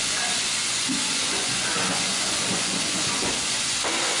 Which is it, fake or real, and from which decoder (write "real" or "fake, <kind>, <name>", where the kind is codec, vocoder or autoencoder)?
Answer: fake, vocoder, Vocos